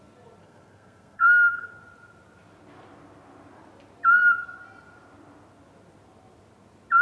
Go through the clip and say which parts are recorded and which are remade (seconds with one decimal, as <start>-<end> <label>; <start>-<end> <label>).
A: 0.0-0.4 recorded; 0.4-1.7 remade; 1.7-7.0 recorded